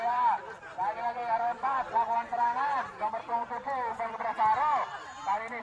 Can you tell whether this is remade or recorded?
remade